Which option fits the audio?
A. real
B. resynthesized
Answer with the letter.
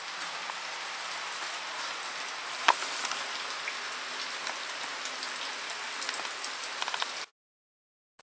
A